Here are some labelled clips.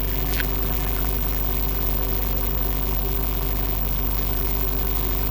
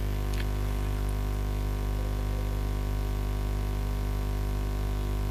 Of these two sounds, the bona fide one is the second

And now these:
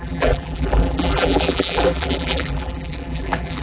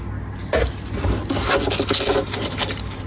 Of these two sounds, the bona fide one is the second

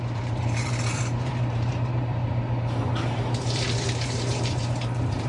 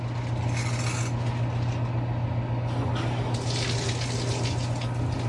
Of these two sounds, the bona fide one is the second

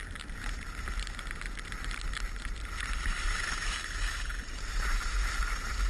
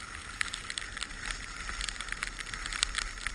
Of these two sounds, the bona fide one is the second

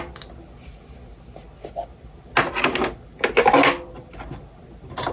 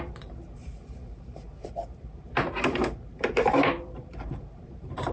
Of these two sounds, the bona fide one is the first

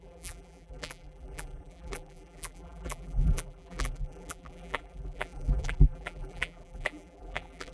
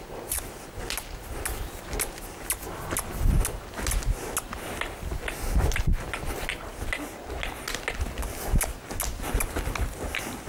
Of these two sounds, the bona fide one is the second